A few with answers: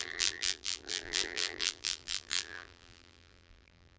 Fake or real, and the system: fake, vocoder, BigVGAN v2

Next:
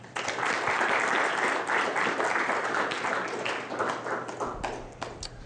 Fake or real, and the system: real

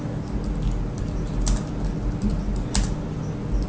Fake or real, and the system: real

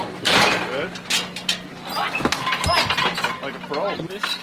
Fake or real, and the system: real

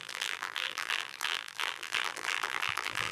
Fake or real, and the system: fake, vocoder, BigVGAN v2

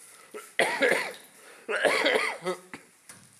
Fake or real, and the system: real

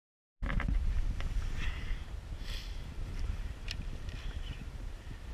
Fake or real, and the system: fake, vocoder, BigVGAN v2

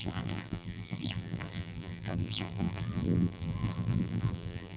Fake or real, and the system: fake, vocoder, BigVGAN v2